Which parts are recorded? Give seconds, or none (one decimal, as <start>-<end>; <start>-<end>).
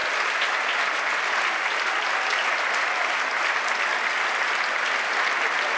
0.0-5.8